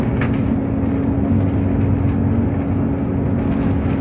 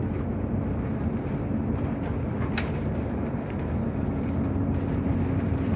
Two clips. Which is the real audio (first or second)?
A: first